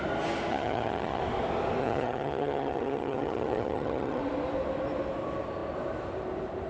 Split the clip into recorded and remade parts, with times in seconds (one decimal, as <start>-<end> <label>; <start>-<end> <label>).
0.0-0.5 recorded; 0.5-1.2 remade; 1.2-1.8 recorded; 1.8-4.2 remade; 4.2-6.7 recorded